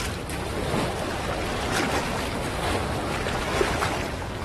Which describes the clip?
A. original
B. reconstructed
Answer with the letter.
A